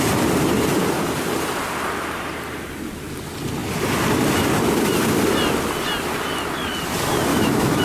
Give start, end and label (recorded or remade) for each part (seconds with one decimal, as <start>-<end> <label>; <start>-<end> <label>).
0.0-7.3 recorded; 7.3-7.8 remade